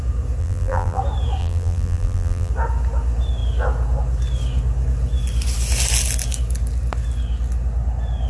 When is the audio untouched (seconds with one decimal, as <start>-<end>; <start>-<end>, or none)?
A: 0.0-0.4; 1.0-1.4; 2.5-8.3